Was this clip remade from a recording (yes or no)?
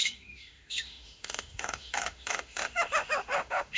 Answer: yes